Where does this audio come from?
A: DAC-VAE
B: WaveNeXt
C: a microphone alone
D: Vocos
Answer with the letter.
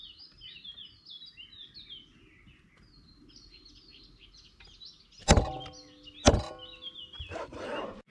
C